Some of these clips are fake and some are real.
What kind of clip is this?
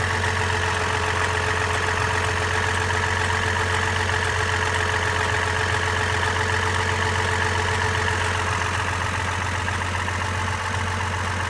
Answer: real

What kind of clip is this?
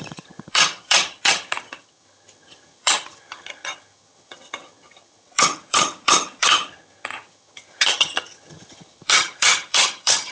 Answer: fake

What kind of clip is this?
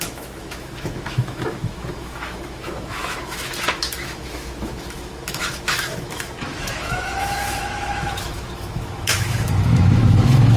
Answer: fake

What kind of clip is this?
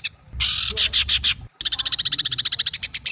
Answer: real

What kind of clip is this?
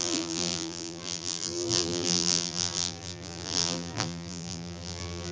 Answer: fake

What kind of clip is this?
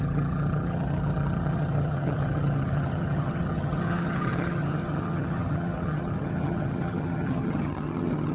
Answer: fake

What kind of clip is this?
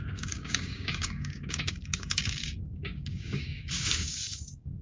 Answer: fake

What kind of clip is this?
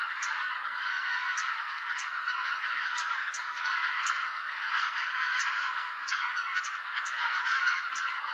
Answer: fake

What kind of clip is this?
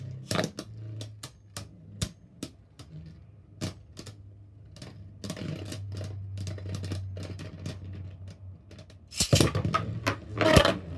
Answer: real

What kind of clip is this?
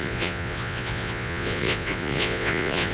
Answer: fake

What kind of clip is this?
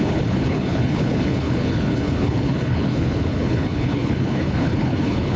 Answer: fake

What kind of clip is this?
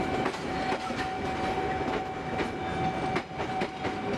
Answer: real